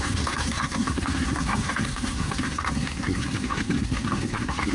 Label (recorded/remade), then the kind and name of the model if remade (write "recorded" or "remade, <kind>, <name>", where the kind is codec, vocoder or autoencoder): remade, codec, SNAC